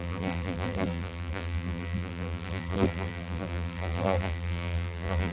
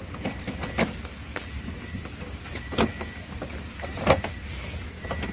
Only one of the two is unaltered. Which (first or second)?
second